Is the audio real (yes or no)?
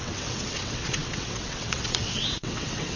no